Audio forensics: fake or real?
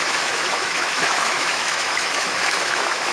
fake